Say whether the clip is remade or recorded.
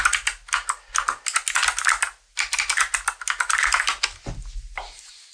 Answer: recorded